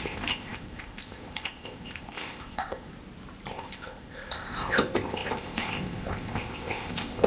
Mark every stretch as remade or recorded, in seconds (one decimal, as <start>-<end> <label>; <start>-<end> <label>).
0.0-2.9 remade; 2.9-3.5 recorded; 3.5-7.3 remade

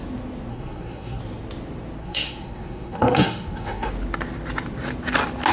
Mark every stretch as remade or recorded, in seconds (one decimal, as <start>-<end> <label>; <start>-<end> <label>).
0.0-0.5 recorded; 0.5-1.2 remade; 1.2-2.0 recorded; 2.0-3.9 remade; 3.9-5.5 recorded